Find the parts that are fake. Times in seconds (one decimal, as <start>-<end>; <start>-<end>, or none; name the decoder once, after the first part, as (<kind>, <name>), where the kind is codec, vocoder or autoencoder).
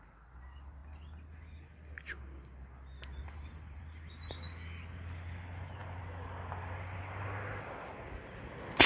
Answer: 3.2-3.8 (vocoder, BigVGAN v2)